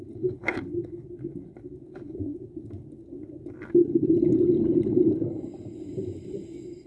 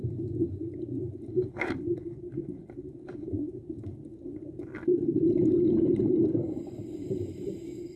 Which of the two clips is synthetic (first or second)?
second